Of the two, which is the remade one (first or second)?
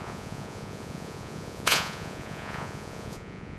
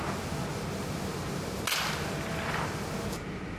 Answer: first